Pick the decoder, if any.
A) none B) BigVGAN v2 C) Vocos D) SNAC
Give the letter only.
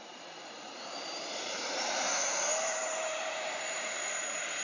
B